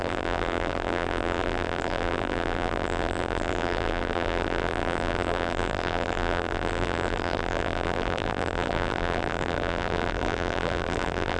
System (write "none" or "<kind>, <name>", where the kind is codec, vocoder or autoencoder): vocoder, BigVGAN v2